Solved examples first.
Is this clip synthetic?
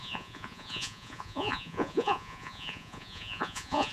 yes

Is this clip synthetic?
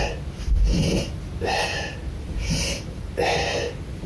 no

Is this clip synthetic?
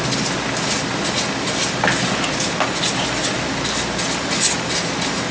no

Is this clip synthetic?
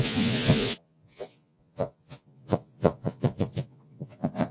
yes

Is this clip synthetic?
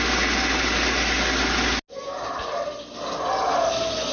no